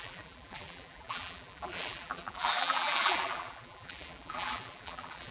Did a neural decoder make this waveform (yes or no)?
yes